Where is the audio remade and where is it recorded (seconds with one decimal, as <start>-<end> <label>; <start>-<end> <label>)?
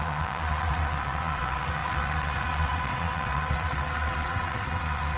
0.0-5.2 remade